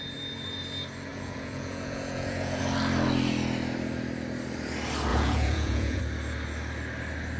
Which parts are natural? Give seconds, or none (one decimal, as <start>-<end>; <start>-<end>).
0.0-1.1; 2.6-5.1; 6.0-7.4